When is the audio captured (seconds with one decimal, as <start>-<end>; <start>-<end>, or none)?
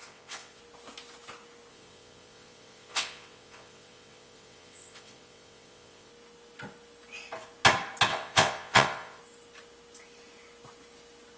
0.6-1.7; 6.1-8.1; 9.2-11.4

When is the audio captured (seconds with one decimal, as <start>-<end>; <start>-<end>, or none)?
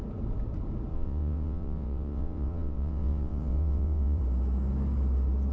0.0-0.9; 4.2-5.5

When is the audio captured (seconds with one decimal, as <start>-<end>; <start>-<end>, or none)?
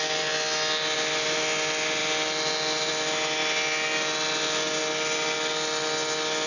0.0-6.5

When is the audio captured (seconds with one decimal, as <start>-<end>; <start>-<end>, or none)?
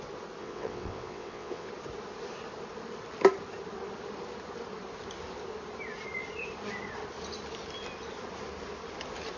0.0-0.4; 1.7-9.4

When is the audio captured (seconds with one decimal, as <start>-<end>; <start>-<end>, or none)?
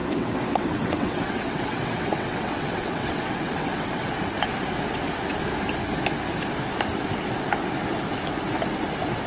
4.1-9.3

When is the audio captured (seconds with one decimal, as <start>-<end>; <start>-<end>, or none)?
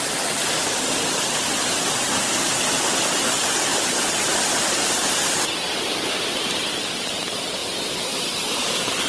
0.0-9.1